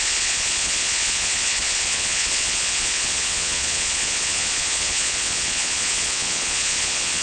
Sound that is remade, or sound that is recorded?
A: remade